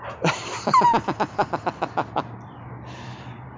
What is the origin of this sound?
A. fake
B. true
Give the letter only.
B